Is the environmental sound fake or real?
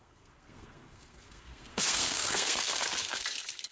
fake